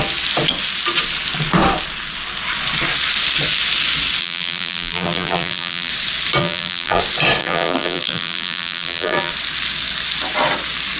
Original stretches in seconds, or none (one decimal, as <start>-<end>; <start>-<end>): 0.0-4.2; 5.9-6.4; 7.0-7.4; 9.3-11.0